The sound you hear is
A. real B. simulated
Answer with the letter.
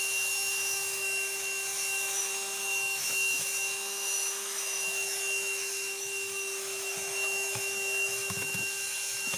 B